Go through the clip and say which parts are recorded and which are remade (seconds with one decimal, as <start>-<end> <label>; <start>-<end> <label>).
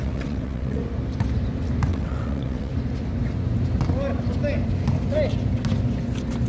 0.0-0.8 remade; 0.8-1.9 recorded; 1.9-2.7 remade; 2.7-6.5 recorded